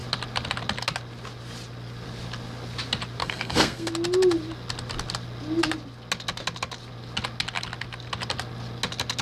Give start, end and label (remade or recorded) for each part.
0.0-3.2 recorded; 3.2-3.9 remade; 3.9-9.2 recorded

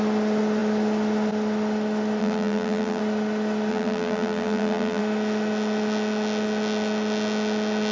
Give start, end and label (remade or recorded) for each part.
0.0-2.2 recorded; 2.2-3.0 remade; 3.0-3.7 recorded; 3.7-5.0 remade; 5.0-7.9 recorded

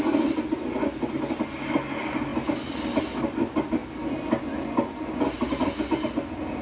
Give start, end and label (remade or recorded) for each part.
0.0-6.6 recorded

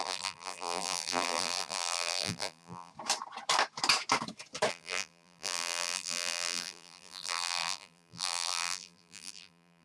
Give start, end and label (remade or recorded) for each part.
0.0-2.9 remade; 2.9-4.7 recorded; 4.7-9.8 remade